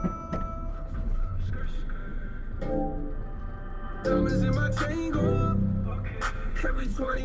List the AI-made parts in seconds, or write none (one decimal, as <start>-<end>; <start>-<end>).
0.7-1.5; 6.5-7.2